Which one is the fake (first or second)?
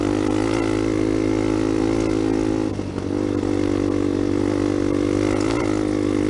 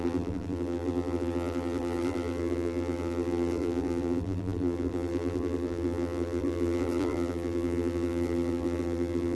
second